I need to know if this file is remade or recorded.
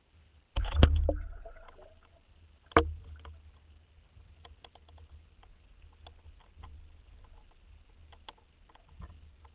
recorded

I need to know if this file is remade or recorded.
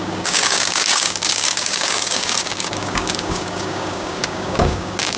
remade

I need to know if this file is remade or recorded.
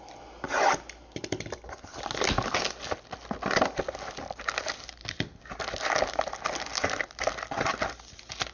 recorded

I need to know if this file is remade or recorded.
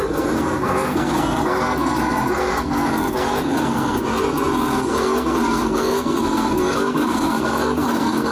remade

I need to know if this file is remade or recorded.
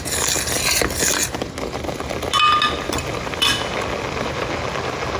recorded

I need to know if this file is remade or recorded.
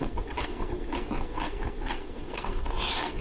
remade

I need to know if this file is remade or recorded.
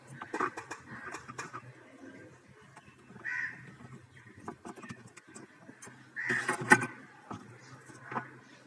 recorded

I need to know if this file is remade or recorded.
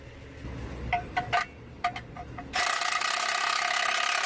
recorded